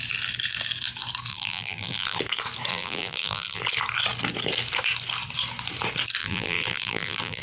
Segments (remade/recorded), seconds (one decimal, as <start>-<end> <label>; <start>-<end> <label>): 0.0-1.3 recorded; 1.3-2.2 remade; 2.2-2.7 recorded; 2.7-3.6 remade; 3.6-6.2 recorded; 6.2-7.4 remade